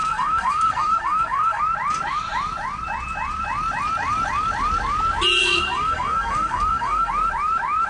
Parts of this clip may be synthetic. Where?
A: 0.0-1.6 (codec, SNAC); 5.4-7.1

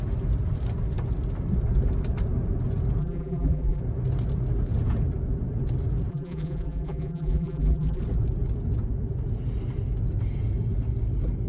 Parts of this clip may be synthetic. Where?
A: 3.0-3.8 (vocoder, BigVGAN v2); 6.1-8.0

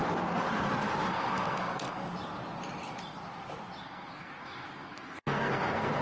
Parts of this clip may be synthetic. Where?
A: 1.1-2.0 (codec, SNAC); 3.8-6.0

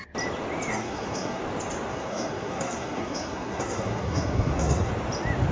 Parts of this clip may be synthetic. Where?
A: 0.7-1.4 (codec, SNAC); 1.9-4.9

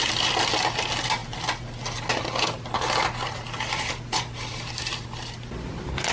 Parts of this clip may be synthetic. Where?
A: none

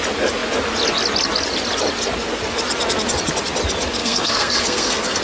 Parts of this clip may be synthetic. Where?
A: 4.0-5.2 (codec, SNAC)